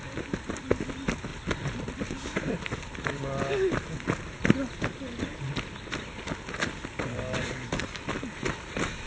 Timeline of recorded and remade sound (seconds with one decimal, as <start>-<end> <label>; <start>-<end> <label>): 0.0-1.3 recorded; 1.3-3.4 remade; 3.4-9.1 recorded